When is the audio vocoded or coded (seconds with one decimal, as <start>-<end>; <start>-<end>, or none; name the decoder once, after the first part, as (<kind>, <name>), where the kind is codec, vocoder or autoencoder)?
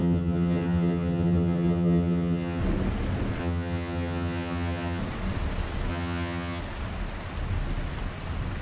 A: 0.0-2.6 (vocoder, HiFi-GAN); 3.4-5.0; 5.9-6.6